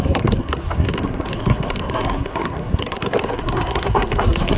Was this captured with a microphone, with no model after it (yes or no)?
no